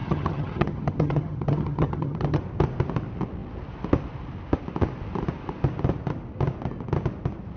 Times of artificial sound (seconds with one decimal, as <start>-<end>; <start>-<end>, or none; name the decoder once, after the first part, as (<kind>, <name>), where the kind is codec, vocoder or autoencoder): 0.0-2.4 (vocoder, HiFi-GAN)